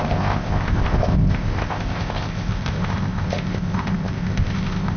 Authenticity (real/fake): fake